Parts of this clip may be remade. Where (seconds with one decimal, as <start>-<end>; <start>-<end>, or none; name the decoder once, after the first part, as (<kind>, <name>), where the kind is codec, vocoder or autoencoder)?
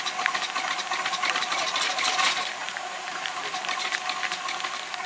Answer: 2.6-3.4 (vocoder, BigVGAN v2)